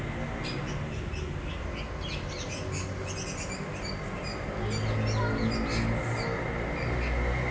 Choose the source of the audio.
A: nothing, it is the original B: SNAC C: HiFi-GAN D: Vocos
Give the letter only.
A